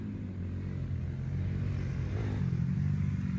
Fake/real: real